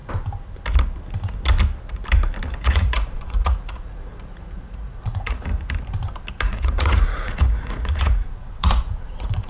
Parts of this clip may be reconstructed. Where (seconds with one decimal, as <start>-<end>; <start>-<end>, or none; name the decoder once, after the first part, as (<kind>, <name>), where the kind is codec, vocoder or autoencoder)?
2.5-5.5 (vocoder, Vocos); 6.3-9.5

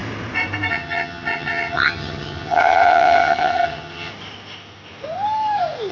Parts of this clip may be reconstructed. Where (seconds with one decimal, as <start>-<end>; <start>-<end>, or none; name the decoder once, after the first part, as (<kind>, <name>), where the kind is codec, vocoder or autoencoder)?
0.7-4.1 (vocoder, HiFi-GAN)